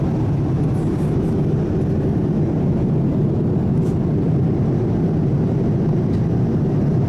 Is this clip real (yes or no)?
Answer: yes